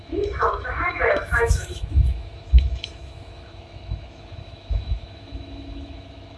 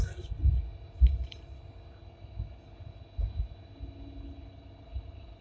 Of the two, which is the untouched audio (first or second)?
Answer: second